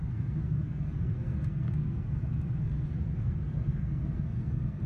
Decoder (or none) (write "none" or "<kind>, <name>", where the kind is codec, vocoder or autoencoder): codec, SNAC